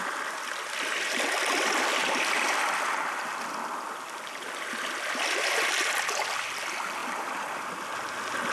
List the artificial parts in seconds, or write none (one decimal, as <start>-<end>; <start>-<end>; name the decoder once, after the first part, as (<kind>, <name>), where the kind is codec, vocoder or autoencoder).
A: none

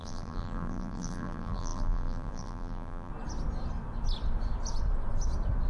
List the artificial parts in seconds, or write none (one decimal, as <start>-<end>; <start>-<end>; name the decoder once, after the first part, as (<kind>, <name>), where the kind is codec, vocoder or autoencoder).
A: 0.0-3.1 (vocoder, BigVGAN v2)

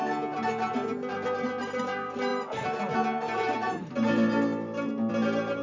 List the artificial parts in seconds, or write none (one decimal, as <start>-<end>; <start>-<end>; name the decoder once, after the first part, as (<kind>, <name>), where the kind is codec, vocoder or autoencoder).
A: none

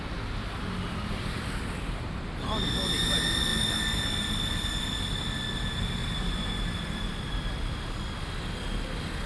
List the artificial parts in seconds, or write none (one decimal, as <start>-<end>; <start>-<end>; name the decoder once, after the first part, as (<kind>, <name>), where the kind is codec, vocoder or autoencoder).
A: 6.0-7.9 (vocoder, BigVGAN v2)